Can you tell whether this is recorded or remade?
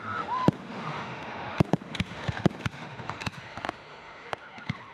remade